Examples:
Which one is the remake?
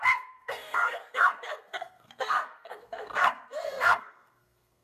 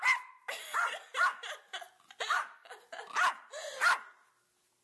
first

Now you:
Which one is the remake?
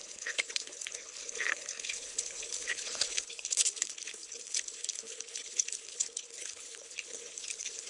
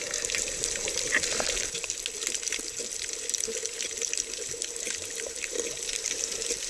first